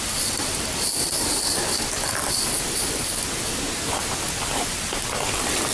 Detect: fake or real real